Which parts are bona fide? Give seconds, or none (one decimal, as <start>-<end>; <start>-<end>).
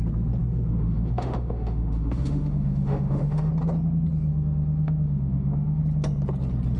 0.0-0.4; 3.5-4.3; 5.8-6.8